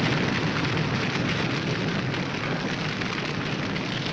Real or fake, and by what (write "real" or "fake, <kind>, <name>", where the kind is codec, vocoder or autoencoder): real